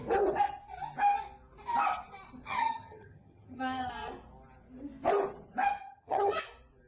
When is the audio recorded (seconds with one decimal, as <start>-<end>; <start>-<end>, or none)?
0.0-2.5; 3.9-5.8; 6.4-6.9